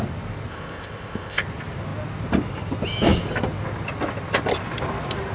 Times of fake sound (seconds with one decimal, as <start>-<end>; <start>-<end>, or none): 0.5-1.4